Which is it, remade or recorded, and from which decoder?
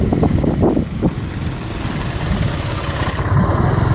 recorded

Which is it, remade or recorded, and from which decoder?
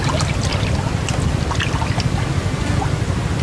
recorded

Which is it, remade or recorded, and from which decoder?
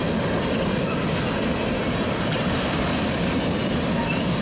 recorded